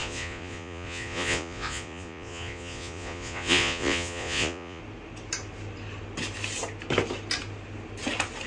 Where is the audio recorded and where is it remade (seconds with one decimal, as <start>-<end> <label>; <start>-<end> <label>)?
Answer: 0.0-4.8 remade; 4.8-8.5 recorded